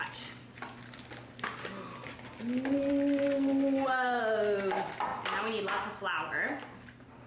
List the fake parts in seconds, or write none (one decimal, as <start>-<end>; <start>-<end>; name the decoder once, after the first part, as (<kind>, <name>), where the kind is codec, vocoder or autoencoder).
3.3-4.2 (codec, SNAC)